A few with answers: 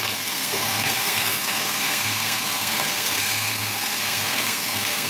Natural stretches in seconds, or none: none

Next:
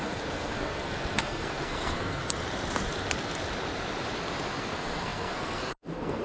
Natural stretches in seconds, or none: 2.2-4.6

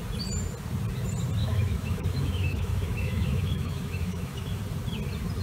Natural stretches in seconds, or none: 0.0-1.4; 4.6-5.4